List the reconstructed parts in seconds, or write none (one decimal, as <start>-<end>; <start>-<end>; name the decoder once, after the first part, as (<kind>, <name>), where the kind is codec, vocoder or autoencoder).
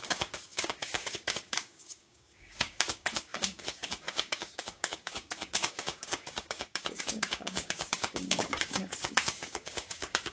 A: 0.0-10.3 (codec, DAC)